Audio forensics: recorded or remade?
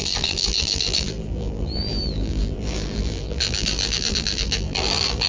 remade